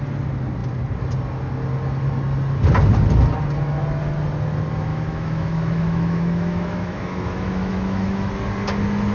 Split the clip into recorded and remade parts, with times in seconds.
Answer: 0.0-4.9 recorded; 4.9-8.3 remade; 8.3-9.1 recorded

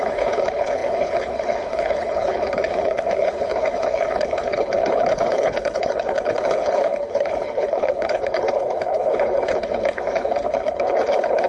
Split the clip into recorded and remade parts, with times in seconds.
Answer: 0.0-11.5 remade

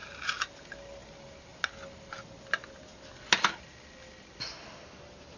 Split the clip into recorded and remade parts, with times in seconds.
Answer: 0.0-5.4 recorded

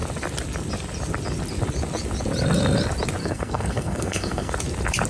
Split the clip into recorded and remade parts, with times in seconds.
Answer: 0.0-3.2 recorded; 3.2-4.5 remade; 4.5-5.1 recorded

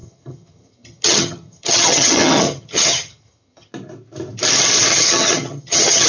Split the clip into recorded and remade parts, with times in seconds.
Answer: 0.0-3.7 remade; 3.7-4.9 recorded; 4.9-6.1 remade

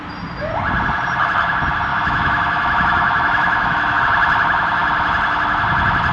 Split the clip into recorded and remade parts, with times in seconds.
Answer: 0.0-1.9 recorded; 1.9-4.0 remade; 4.0-6.1 recorded

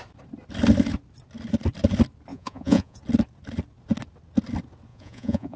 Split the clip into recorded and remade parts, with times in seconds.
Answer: 0.0-2.3 recorded; 2.3-3.0 remade; 3.0-4.9 recorded; 4.9-5.6 remade